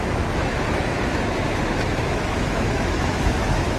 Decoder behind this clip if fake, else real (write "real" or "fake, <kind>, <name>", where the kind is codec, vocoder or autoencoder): fake, autoencoder, DAC-VAE